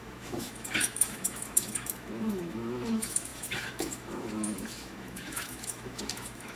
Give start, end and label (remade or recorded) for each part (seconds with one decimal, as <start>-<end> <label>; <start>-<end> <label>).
0.0-6.6 remade

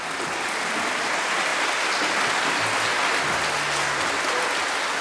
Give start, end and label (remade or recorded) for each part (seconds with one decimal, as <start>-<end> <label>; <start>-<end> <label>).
0.0-5.0 recorded

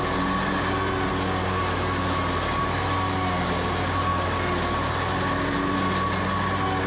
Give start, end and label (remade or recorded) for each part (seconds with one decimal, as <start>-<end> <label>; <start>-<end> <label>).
0.0-6.9 recorded

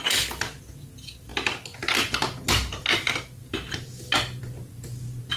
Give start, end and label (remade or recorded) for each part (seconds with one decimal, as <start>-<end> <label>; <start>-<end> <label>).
0.0-5.4 recorded

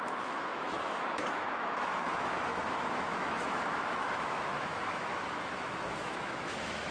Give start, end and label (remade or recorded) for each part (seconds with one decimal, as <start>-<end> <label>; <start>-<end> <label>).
0.0-6.9 remade

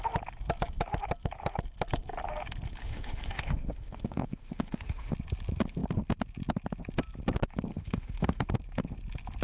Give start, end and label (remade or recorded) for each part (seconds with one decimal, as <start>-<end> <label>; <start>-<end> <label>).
0.0-2.8 recorded; 2.8-5.1 remade; 5.1-7.7 recorded; 7.7-8.5 remade; 8.5-9.4 recorded